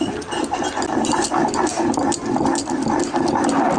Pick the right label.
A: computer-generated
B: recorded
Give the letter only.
B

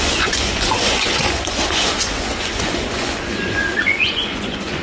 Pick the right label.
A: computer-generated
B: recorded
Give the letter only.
A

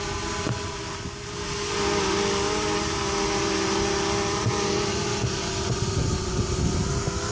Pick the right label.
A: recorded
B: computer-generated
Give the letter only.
A